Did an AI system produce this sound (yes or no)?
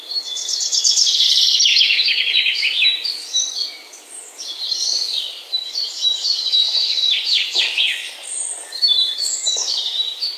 yes